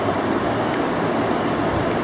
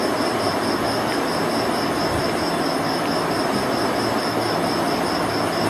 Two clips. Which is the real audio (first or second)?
second